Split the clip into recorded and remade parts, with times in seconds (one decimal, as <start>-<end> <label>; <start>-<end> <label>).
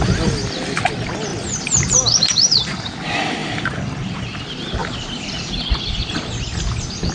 0.0-7.1 recorded